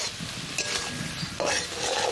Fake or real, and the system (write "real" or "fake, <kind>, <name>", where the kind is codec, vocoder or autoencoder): real